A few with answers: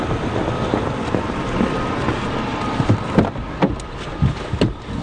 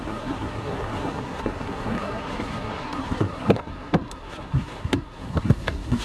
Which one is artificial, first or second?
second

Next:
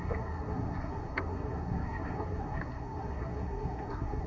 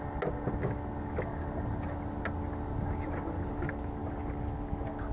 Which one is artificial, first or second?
first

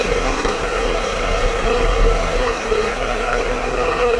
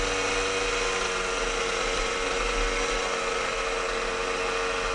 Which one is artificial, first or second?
first